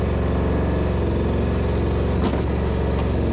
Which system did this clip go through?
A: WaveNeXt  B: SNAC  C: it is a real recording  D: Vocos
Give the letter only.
C